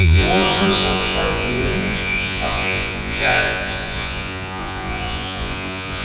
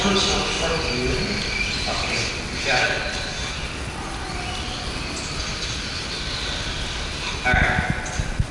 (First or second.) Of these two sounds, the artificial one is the first